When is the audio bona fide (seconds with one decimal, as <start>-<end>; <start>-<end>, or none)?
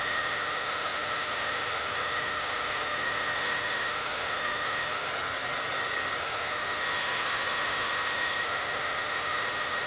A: 5.1-6.2